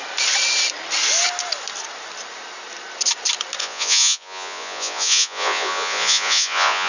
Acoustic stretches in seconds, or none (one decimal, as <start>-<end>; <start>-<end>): 0.0-3.6